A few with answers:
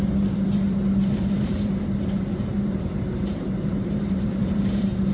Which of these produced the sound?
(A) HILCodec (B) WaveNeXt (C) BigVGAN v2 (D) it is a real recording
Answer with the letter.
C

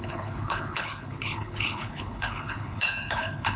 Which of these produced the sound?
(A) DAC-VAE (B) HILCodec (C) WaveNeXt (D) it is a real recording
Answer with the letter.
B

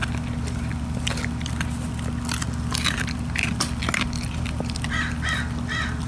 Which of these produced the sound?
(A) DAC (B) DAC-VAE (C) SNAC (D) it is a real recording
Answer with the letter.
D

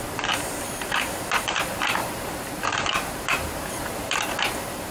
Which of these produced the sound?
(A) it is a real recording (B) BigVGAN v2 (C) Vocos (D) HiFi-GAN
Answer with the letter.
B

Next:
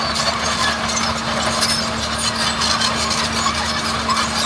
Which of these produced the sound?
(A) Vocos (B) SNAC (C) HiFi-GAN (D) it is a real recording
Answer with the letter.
D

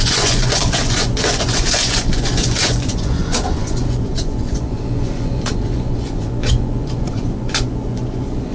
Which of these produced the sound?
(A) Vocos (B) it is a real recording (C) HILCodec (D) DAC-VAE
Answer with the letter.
A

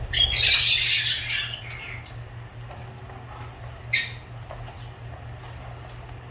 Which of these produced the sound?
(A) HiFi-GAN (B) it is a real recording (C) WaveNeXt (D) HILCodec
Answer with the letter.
B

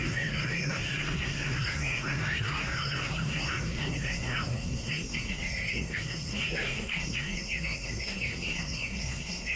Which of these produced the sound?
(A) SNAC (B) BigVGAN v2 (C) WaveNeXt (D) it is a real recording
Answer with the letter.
A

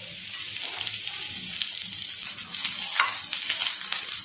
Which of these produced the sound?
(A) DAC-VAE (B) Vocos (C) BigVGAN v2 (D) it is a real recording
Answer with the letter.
D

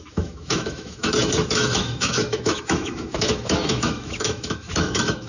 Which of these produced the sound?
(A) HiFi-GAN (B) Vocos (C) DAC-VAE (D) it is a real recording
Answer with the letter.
C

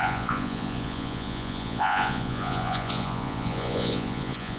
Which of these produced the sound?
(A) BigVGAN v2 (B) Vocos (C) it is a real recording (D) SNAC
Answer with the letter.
B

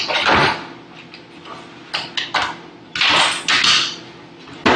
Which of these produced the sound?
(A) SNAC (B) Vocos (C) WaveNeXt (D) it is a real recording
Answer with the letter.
D